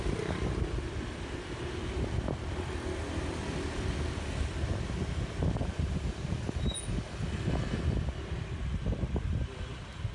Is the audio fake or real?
real